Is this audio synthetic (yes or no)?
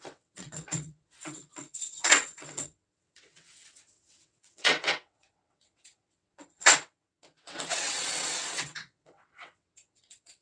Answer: yes